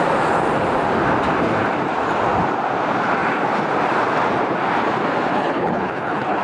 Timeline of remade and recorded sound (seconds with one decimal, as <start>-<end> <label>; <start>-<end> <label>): 0.0-5.3 recorded; 5.3-6.4 remade